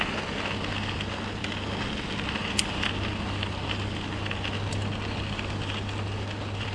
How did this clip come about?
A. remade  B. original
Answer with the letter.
B